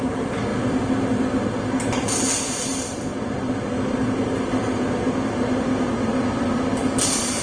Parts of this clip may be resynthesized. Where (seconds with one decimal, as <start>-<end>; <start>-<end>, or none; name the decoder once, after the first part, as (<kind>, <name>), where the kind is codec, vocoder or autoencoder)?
none